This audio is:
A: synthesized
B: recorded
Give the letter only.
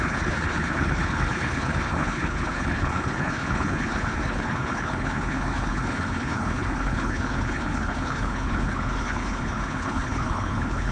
A